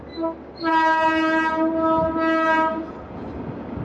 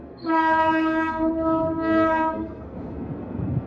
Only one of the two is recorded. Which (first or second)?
first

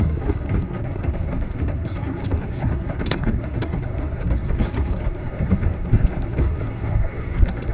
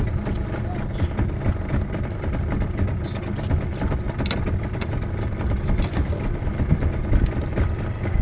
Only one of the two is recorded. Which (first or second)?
second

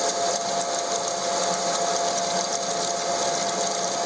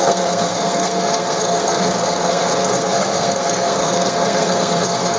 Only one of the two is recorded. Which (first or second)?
first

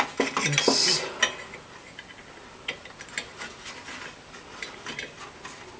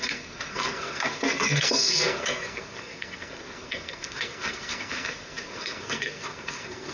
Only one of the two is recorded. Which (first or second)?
first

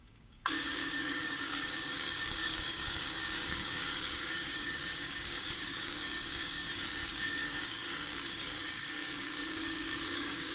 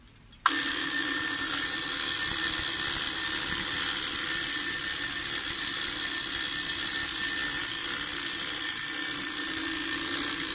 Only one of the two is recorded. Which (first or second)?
second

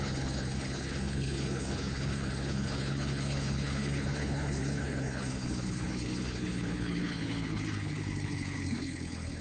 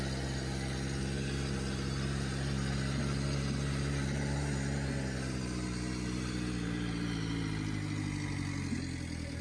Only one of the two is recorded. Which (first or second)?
second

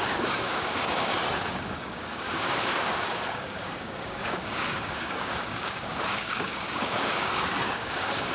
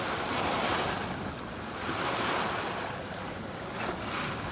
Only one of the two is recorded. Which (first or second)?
second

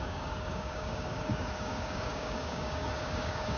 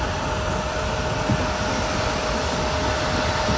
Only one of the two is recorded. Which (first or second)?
second